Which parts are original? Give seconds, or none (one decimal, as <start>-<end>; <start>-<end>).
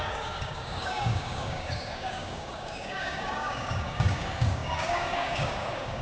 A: none